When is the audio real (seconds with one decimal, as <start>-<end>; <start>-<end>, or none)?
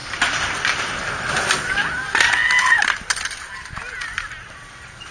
0.0-5.1